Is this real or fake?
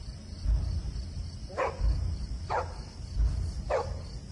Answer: real